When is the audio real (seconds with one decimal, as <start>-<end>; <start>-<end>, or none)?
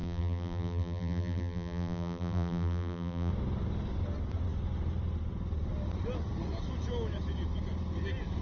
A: 3.3-8.4